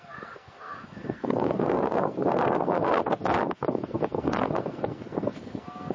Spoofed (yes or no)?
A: yes